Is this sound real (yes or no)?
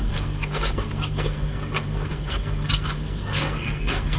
no